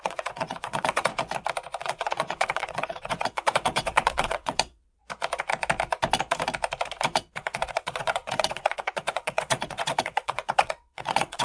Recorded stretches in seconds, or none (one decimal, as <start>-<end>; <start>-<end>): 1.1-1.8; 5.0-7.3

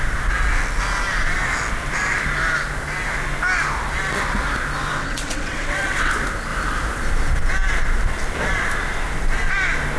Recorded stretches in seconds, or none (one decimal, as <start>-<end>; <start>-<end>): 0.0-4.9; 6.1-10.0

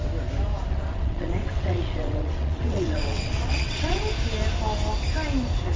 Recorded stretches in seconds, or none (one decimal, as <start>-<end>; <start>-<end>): 0.0-0.7; 4.0-5.8

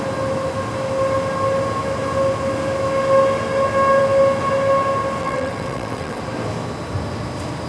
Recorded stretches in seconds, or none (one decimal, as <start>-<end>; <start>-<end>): 0.0-5.2; 6.2-7.7

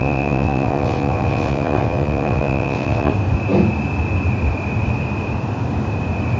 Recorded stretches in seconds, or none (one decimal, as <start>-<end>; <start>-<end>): 3.1-6.4